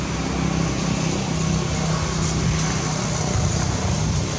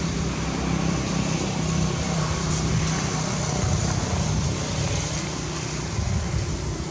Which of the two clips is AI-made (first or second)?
second